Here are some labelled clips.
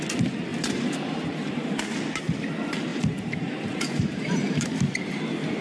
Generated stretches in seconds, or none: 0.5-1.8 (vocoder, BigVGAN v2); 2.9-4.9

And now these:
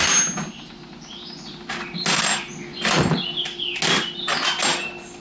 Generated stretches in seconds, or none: none

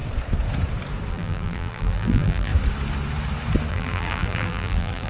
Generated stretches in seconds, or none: 1.1-2.5 (vocoder, BigVGAN v2); 3.7-5.1

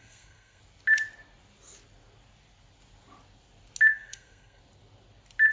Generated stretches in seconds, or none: 0.0-0.6 (codec, SNAC); 3.9-4.6

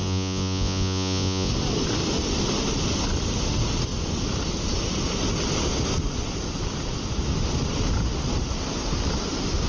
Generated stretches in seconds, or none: 0.0-1.5 (vocoder, Vocos)

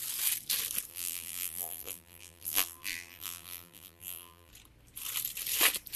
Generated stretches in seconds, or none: 0.9-4.5 (vocoder, BigVGAN v2)

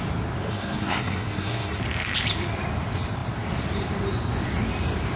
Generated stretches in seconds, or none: 0.5-1.8 (codec, SNAC)

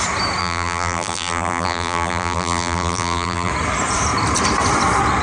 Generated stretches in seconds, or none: 0.4-3.5 (vocoder, BigVGAN v2)